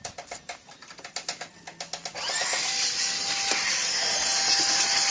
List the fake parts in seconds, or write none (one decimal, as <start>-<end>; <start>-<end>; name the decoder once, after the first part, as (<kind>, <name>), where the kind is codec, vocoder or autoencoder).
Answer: none